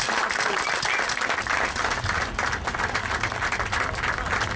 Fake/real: real